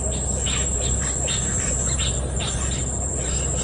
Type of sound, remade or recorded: recorded